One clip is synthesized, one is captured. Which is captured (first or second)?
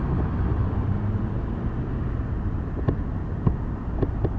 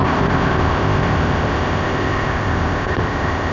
first